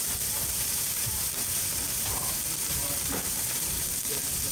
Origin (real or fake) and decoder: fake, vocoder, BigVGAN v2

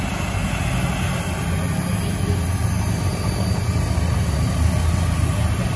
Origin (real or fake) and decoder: real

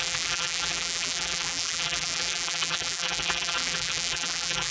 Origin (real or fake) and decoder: fake, vocoder, BigVGAN v2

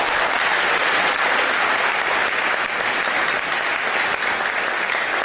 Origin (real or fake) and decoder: real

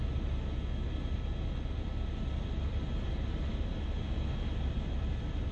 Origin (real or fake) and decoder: real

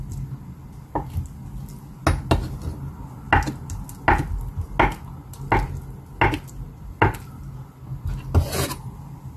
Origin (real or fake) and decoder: real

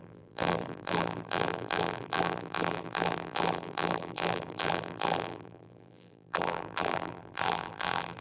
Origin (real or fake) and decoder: fake, vocoder, BigVGAN v2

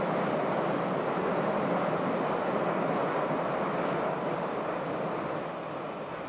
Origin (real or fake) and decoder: real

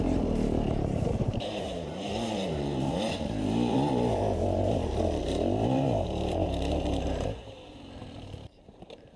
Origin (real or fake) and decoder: fake, vocoder, BigVGAN v2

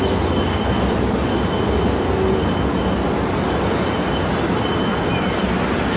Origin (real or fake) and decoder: real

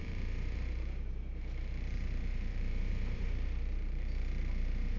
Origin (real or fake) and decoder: fake, vocoder, BigVGAN v2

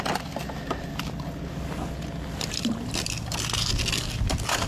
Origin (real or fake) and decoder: real